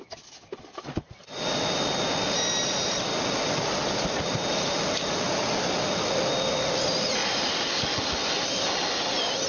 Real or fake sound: real